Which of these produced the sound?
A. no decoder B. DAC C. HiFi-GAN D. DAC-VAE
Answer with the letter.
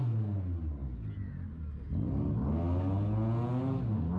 A